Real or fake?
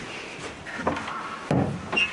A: real